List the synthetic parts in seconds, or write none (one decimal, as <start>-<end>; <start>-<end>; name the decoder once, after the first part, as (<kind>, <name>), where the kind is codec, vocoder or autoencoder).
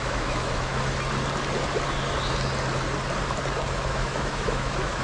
0.0-0.7 (autoencoder, DAC-VAE); 3.7-5.0